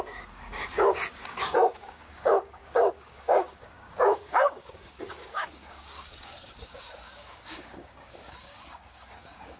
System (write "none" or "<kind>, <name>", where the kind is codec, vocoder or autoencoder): codec, DAC